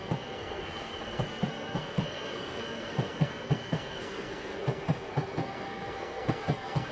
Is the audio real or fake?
fake